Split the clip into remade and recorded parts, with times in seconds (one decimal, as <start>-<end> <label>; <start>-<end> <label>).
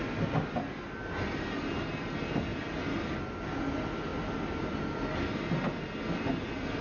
0.0-6.8 recorded